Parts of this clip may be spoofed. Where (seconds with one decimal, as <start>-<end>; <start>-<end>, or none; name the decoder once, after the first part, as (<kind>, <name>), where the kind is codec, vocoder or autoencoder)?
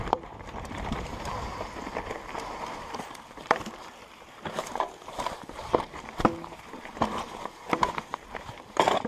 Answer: 0.0-1.5 (vocoder, BigVGAN v2); 2.6-9.1